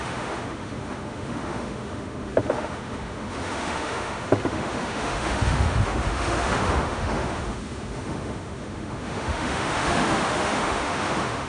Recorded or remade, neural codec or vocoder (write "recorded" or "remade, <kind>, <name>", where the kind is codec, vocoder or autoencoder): remade, autoencoder, DAC-VAE